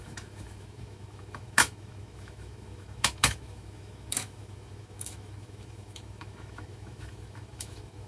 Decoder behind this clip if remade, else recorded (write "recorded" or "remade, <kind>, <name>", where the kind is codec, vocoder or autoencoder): remade, autoencoder, DAC-VAE